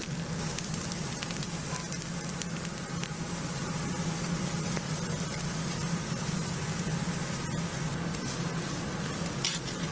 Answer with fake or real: real